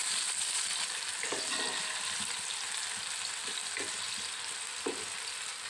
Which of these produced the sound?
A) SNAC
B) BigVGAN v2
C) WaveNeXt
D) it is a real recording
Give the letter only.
D